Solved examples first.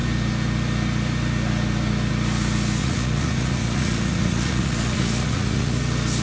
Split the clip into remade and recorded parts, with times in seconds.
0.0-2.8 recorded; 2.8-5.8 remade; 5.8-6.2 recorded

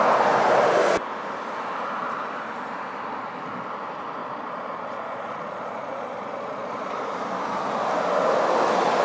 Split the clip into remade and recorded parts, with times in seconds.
0.0-4.2 recorded; 4.2-6.9 remade; 6.9-9.0 recorded

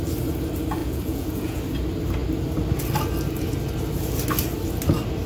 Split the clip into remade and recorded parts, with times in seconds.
0.0-0.8 recorded; 0.8-1.6 remade; 1.6-5.3 recorded

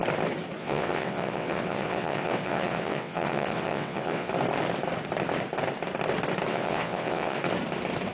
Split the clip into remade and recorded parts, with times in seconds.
0.0-0.6 recorded; 0.6-4.3 remade; 4.3-6.5 recorded; 6.5-7.4 remade; 7.4-8.1 recorded

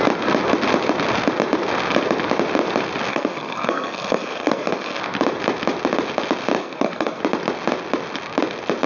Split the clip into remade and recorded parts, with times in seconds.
0.0-3.1 recorded; 3.1-5.0 remade; 5.0-6.6 recorded; 6.6-7.2 remade; 7.2-8.9 recorded

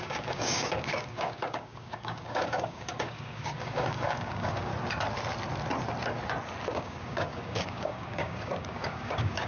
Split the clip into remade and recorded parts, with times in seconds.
0.0-4.7 remade; 4.7-6.7 recorded; 6.7-9.5 remade